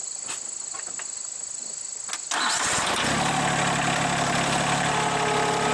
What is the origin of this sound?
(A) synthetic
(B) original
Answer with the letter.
B